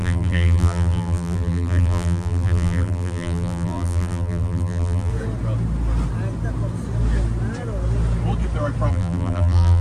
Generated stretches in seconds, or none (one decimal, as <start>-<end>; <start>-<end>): 0.0-5.1; 8.9-9.8